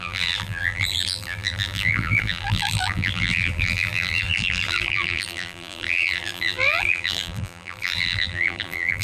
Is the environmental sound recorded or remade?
remade